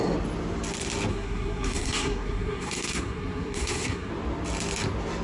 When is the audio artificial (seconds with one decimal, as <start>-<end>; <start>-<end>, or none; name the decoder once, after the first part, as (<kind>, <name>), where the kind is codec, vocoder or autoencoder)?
1.1-4.1 (codec, SNAC)